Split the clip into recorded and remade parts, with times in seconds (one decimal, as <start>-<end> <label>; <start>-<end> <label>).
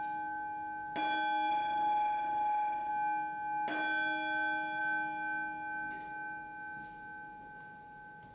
0.0-1.5 recorded; 1.5-2.9 remade; 2.9-8.3 recorded